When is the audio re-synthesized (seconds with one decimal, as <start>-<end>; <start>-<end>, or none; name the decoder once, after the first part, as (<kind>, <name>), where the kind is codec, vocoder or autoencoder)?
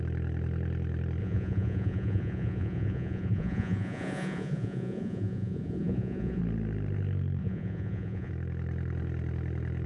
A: 1.2-6.4 (vocoder, Vocos); 7.4-8.3